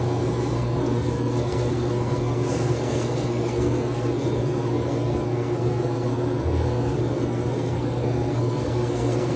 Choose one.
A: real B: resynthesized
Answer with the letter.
B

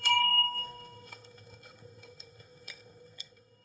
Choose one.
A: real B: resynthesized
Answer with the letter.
B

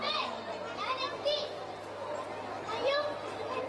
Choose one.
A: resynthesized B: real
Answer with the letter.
B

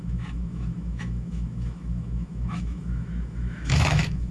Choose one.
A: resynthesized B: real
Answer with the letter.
A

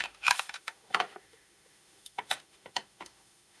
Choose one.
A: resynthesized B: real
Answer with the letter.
A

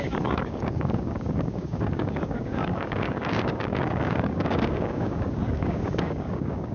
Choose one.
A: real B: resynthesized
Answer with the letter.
B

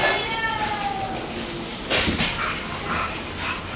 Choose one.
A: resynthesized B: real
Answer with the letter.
B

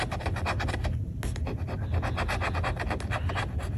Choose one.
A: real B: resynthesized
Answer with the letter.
A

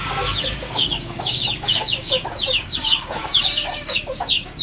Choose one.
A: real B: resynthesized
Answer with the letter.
B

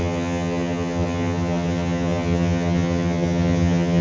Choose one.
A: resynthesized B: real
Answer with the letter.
A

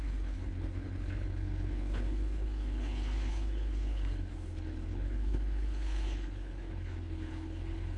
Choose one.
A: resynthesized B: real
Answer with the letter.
A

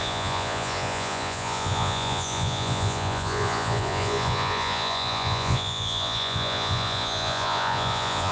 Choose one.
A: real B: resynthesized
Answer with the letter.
B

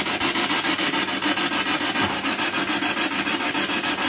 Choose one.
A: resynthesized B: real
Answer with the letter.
B